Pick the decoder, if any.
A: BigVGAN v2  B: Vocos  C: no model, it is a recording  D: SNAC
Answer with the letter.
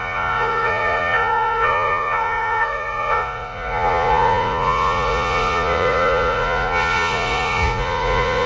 B